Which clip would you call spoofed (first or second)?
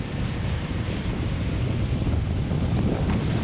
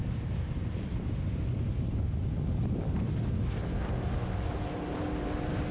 first